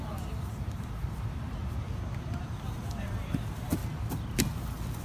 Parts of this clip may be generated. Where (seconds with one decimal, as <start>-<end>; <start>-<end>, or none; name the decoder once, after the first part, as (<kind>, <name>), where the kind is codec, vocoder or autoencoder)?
0.0-1.6 (vocoder, BigVGAN v2); 2.4-3.8